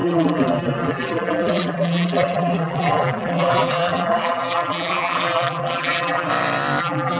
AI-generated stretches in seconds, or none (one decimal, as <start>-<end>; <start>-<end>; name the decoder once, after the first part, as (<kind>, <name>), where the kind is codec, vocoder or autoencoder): 0.0-6.3 (vocoder, BigVGAN v2); 6.8-7.2